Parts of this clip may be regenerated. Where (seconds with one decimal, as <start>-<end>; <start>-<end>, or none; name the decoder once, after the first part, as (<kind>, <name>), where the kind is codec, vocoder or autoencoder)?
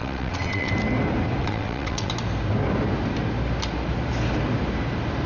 0.0-0.7 (vocoder, WaveNeXt); 1.4-2.1